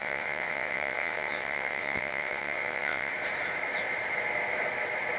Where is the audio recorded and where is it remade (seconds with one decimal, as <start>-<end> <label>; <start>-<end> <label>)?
0.0-3.1 remade; 3.1-5.2 recorded